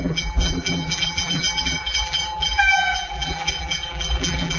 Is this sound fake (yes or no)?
yes